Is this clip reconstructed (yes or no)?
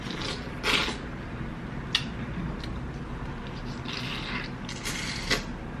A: no